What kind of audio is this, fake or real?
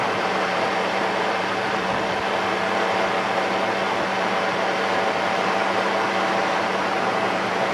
fake